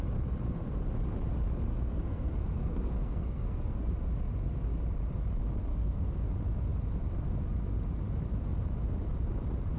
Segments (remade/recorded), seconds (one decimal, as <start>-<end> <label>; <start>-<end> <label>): 0.0-1.7 recorded; 1.7-3.9 remade; 3.9-5.7 recorded; 5.7-6.3 remade; 6.3-9.8 recorded